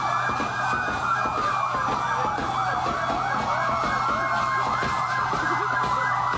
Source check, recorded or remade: recorded